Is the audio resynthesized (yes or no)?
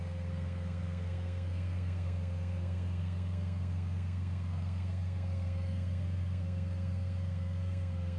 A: yes